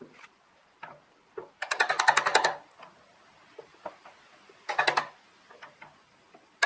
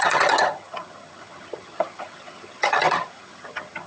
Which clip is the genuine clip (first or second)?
first